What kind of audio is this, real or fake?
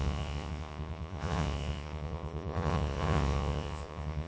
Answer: fake